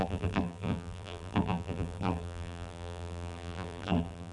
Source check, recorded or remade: remade